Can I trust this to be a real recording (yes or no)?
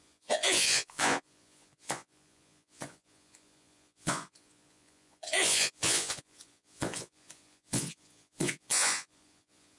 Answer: no